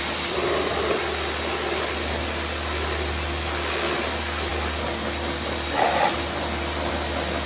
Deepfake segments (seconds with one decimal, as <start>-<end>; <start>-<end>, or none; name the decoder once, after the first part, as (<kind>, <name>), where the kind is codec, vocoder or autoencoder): none